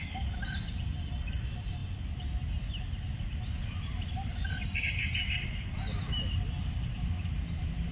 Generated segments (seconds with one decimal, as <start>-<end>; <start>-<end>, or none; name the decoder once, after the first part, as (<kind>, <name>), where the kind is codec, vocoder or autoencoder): none